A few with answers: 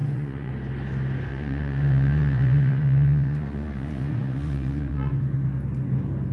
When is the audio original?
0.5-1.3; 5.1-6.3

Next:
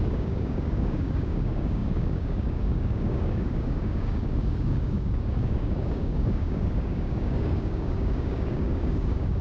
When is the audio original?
none

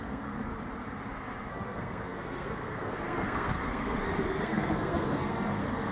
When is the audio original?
0.5-1.5

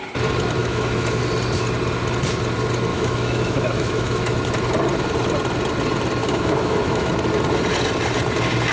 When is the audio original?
0.0-0.6; 1.2-2.9; 4.3-6.2; 7.1-8.7

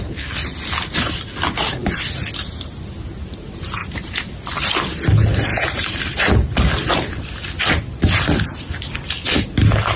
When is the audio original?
0.0-5.5; 6.9-10.0